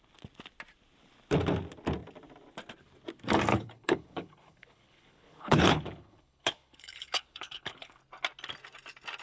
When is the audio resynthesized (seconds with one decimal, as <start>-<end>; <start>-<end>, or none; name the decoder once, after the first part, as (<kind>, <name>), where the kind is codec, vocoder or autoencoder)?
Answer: 3.5-8.0 (codec, HILCodec)